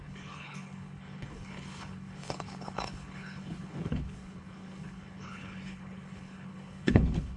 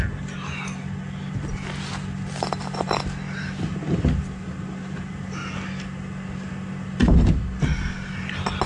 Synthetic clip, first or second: first